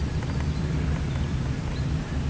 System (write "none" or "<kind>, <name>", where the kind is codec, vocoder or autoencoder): vocoder, BigVGAN v2